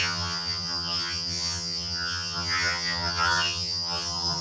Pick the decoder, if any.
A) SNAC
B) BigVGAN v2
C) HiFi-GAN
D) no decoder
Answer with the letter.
C